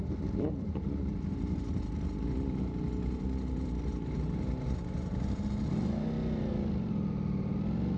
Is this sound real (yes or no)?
yes